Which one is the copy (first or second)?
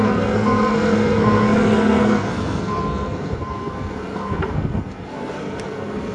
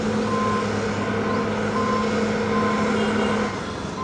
first